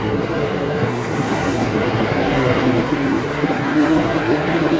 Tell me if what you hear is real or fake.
fake